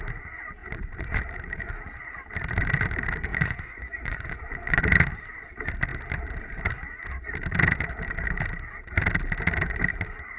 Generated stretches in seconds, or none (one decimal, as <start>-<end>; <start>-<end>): 0.6-1.2; 3.3-4.8